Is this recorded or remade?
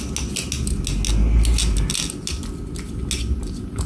recorded